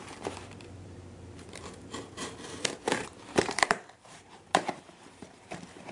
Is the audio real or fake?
fake